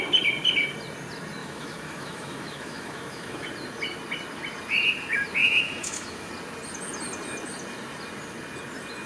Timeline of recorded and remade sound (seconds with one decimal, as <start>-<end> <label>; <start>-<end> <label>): 0.0-1.4 recorded; 1.4-3.5 remade; 3.5-5.4 recorded; 5.4-6.3 remade; 6.3-9.1 recorded